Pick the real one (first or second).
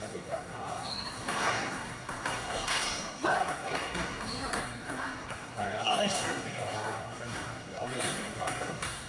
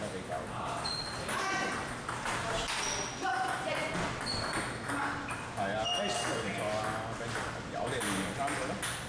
second